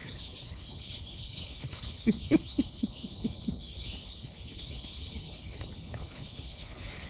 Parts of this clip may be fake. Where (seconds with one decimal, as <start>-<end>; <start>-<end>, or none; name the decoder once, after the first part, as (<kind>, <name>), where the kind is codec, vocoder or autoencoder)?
0.0-7.1 (codec, HILCodec)